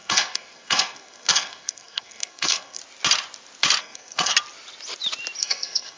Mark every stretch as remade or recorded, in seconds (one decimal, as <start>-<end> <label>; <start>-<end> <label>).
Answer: 0.0-2.8 remade; 2.8-3.8 recorded; 3.8-4.3 remade; 4.3-5.4 recorded; 5.4-6.0 remade